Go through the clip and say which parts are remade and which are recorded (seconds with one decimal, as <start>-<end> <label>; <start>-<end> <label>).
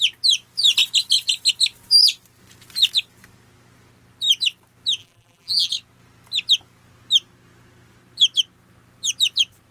0.0-5.0 recorded; 5.0-5.7 remade; 5.7-9.7 recorded